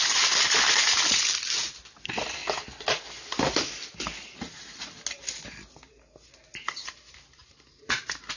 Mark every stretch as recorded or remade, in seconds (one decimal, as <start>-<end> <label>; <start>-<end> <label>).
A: 0.0-1.2 remade; 1.2-1.8 recorded; 1.8-2.4 remade; 2.4-6.6 recorded; 6.6-8.4 remade